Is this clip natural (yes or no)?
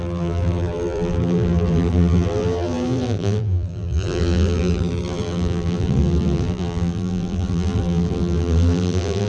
no